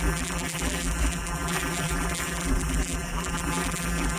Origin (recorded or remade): remade